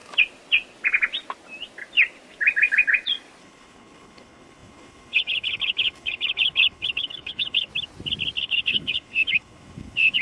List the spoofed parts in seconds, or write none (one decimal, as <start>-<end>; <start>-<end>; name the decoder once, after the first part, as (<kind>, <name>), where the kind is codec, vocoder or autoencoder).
3.4-7.7 (codec, HILCodec); 8.4-10.2